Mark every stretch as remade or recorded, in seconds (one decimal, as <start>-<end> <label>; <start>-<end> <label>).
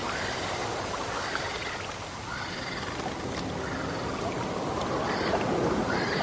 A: 0.0-0.9 remade; 0.9-6.2 recorded